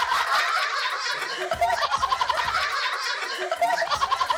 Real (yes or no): yes